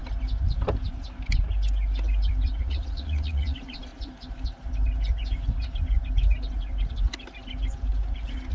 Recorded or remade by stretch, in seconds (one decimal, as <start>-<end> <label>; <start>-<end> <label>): 0.0-2.6 recorded; 2.6-3.9 remade; 3.9-8.5 recorded